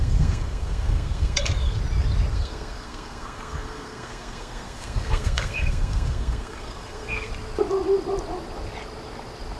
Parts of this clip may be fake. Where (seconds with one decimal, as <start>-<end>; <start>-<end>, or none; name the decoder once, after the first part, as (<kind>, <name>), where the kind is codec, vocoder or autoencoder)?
0.0-1.8 (codec, SNAC); 2.3-7.3